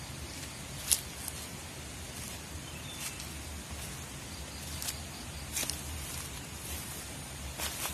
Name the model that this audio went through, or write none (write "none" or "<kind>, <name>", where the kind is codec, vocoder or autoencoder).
none